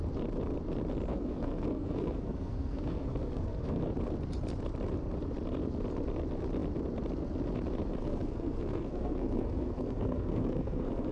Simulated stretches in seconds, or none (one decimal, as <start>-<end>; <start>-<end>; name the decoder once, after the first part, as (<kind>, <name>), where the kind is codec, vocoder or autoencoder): 1.1-3.8 (codec, SNAC); 8.0-11.1